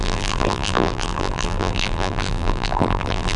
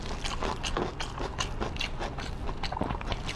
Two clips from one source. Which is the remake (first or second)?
first